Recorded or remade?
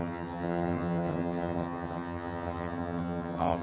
remade